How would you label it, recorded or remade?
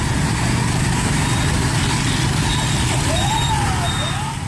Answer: recorded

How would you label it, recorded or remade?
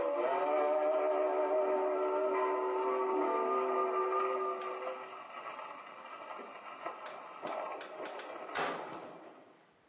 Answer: recorded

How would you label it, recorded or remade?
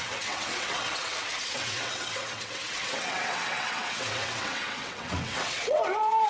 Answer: remade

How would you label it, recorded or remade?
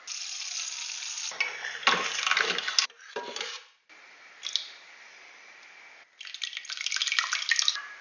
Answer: recorded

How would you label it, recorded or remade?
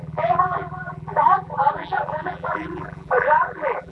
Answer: remade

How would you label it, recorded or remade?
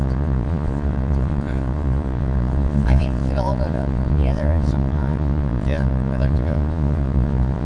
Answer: remade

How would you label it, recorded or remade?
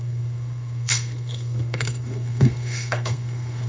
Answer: remade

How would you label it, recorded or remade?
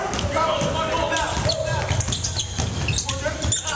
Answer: recorded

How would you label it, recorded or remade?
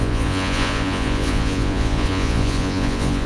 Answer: remade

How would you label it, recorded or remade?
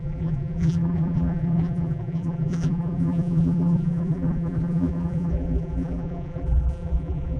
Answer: remade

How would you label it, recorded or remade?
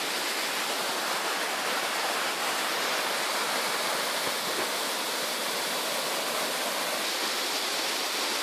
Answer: recorded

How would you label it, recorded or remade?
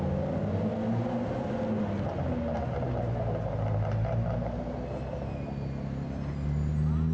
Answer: recorded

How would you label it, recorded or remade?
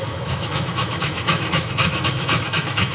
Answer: remade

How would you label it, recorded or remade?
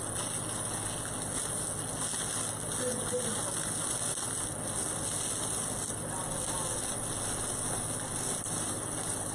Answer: recorded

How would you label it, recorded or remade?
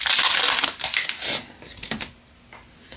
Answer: recorded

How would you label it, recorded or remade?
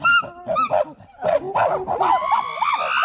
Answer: recorded